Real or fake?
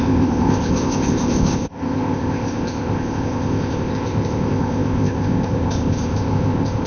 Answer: fake